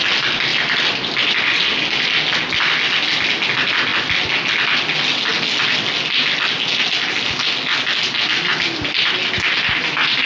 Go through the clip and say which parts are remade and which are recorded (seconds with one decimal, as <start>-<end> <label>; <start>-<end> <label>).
0.0-0.5 recorded; 0.5-2.0 remade; 2.0-10.3 recorded